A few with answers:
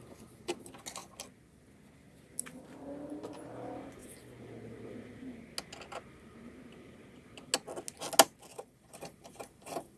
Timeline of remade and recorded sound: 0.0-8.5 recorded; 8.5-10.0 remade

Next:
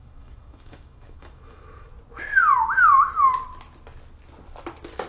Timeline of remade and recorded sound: 0.0-1.9 remade; 1.9-5.1 recorded